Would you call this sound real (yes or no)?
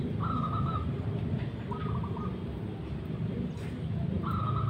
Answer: yes